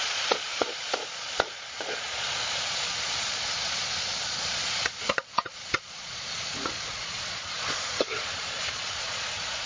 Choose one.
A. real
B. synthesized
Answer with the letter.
B